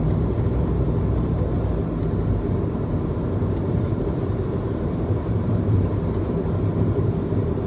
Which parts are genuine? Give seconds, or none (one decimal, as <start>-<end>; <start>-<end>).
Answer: 1.5-2.7